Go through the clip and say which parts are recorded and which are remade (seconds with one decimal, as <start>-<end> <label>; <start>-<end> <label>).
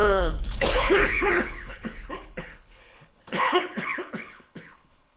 0.0-5.2 remade